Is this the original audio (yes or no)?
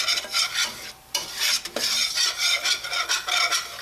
yes